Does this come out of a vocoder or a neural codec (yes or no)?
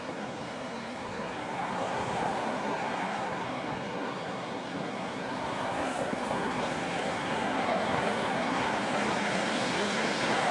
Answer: yes